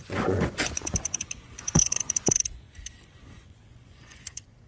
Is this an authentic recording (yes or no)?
no